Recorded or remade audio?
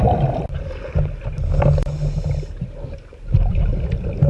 recorded